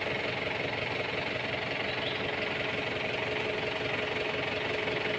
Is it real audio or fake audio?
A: real